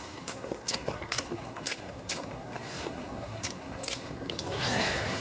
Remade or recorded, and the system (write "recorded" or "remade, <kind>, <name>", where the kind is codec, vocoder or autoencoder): remade, codec, SNAC